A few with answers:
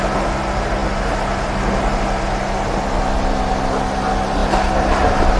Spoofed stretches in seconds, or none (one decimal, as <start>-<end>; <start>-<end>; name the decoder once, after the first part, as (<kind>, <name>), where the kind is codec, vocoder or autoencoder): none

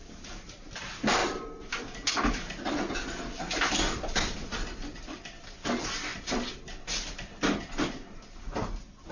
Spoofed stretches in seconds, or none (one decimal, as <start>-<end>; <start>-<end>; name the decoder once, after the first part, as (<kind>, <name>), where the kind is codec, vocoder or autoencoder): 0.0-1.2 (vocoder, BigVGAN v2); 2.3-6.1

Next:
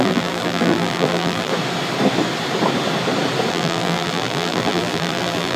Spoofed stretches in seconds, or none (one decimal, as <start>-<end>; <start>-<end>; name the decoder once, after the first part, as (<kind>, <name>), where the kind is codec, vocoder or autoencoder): 0.0-1.5 (vocoder, BigVGAN v2); 3.5-5.6

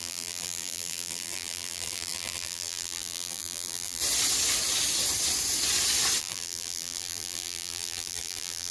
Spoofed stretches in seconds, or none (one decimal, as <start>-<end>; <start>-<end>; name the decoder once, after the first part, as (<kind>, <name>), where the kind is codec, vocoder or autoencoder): 0.0-4.0 (vocoder, BigVGAN v2); 6.2-8.7

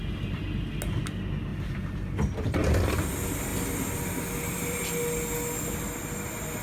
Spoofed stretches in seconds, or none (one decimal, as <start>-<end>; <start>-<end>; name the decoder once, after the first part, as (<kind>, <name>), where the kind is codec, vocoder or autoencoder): 1.5-2.9 (vocoder, BigVGAN v2); 3.5-4.8

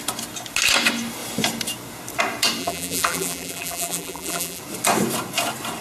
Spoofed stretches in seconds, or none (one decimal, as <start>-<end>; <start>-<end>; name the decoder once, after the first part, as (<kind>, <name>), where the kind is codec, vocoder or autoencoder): 2.6-4.6 (vocoder, BigVGAN v2)

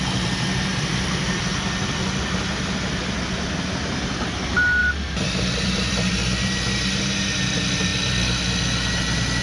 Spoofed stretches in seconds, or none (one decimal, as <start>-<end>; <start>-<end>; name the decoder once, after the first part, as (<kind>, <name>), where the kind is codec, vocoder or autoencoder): 0.7-1.4 (vocoder, BigVGAN v2); 4.8-6.6